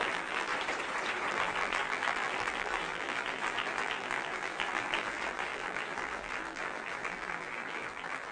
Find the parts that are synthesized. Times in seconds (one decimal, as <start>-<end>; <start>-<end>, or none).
0.0-0.5; 1.3-8.3